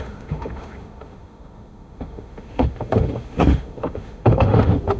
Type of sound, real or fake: fake